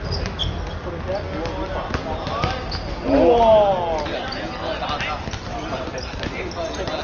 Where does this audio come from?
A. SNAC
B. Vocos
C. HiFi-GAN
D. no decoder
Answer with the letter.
D